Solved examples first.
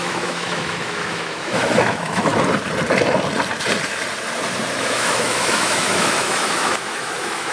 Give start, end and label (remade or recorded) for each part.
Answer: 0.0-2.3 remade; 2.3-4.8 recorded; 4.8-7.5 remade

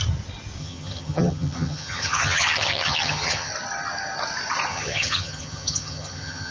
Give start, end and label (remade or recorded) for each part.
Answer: 0.0-0.6 recorded; 0.6-3.5 remade; 3.5-4.7 recorded; 4.7-6.5 remade